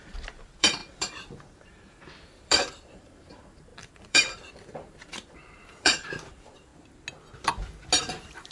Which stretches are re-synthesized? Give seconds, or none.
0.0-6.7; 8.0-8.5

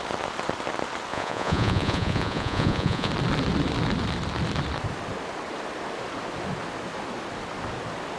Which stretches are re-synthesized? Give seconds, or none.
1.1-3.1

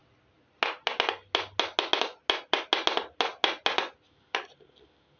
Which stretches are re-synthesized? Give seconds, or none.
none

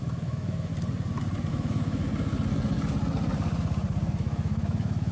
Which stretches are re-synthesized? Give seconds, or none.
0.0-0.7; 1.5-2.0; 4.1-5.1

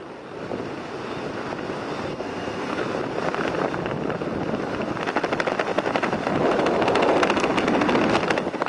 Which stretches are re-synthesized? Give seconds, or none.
2.1-2.8

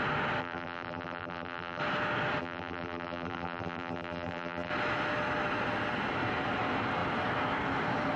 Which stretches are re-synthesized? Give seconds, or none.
0.4-1.8; 2.4-4.7

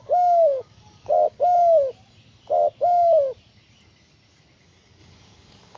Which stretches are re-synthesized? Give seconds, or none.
0.0-1.1; 4.6-5.8